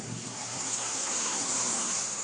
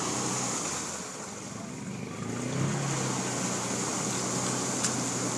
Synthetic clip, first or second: first